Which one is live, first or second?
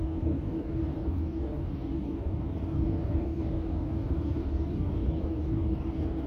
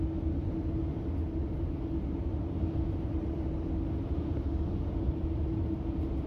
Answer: second